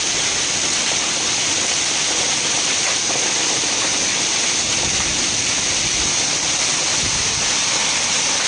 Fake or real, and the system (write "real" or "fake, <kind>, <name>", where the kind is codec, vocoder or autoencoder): real